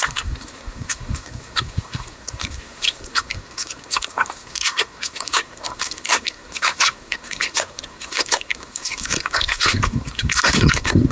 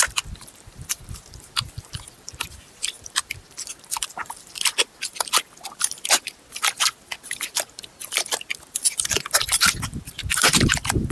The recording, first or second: second